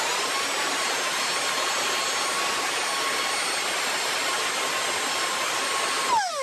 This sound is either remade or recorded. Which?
recorded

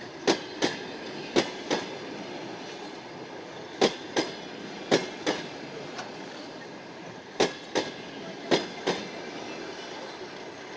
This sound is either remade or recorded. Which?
recorded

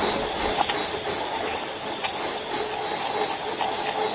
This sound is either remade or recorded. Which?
recorded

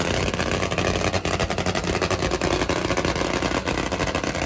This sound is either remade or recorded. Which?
recorded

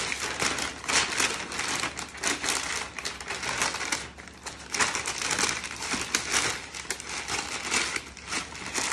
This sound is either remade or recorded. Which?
recorded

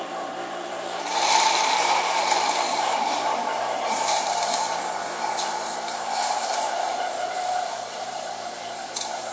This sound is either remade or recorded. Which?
remade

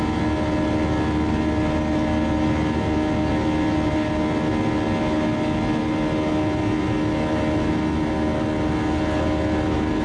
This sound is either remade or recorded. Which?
recorded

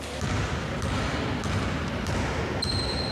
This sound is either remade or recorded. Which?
recorded